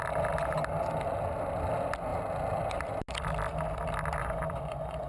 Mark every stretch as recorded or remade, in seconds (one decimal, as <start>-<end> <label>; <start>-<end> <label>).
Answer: 0.0-4.2 recorded; 4.2-5.1 remade